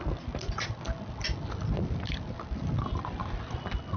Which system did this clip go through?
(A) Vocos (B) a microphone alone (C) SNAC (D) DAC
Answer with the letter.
B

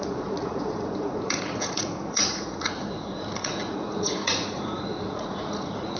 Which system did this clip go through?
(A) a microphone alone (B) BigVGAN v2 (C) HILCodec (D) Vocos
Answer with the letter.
D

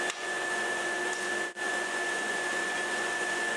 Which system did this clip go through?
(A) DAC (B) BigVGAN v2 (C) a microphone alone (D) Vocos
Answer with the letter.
D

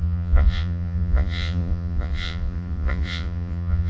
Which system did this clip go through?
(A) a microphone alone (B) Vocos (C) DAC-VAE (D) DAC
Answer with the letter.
B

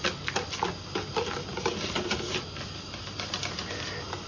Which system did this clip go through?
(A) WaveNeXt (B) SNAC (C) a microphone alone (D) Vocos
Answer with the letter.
C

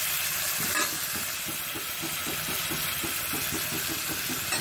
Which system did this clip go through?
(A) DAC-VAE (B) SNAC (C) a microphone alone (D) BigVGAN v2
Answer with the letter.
C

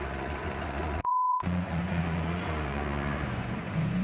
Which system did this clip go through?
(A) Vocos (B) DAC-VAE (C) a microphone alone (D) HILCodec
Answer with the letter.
A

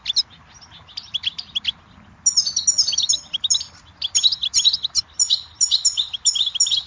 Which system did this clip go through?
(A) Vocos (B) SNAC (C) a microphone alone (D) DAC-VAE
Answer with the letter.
C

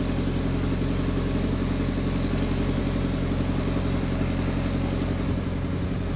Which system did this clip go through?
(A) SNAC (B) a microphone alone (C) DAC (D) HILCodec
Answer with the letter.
B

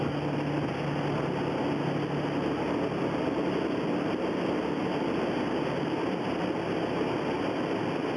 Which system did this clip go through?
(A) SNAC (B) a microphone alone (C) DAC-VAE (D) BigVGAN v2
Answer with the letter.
B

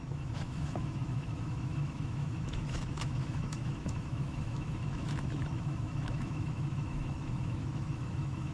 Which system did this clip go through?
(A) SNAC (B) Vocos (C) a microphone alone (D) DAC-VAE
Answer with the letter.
D